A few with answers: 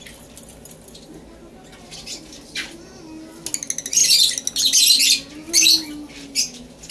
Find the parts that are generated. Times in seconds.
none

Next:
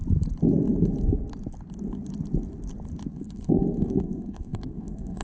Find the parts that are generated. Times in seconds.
3.1-5.2 (codec, SNAC)

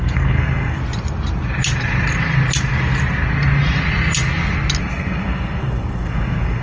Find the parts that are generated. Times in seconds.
0.0-0.8 (codec, SNAC); 4.8-6.6

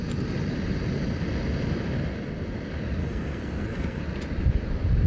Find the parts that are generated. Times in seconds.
3.0-4.0 (codec, SNAC)

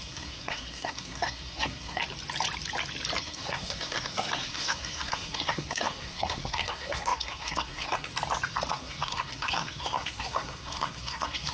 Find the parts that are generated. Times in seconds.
0.0-2.0 (codec, SNAC); 3.2-8.1; 8.7-11.5